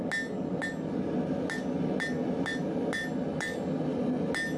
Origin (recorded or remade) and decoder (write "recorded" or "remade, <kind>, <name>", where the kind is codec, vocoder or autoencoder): recorded